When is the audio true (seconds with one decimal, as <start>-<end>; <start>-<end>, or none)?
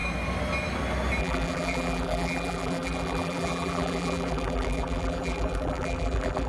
0.0-1.2